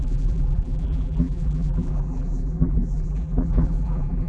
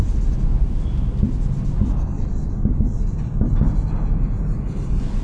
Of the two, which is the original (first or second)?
second